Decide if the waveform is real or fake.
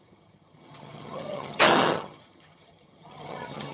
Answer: fake